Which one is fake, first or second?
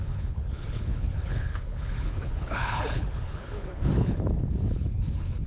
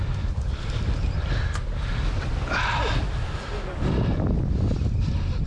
first